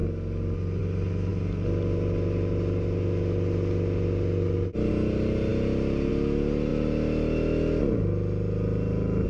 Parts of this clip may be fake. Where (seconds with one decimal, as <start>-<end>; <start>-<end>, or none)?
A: none